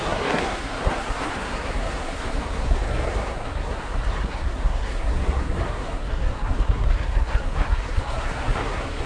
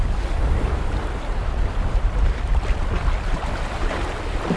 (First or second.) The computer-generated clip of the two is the first